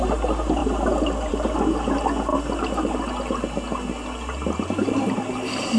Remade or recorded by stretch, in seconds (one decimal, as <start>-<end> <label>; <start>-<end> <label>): 0.0-5.8 recorded